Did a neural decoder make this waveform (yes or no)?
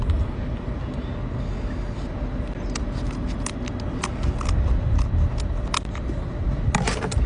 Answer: no